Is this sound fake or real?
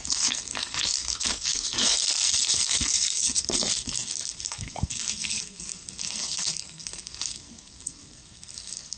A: fake